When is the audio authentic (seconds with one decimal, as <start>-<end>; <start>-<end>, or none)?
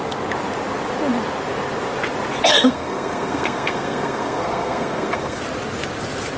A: 0.0-2.5; 5.4-6.4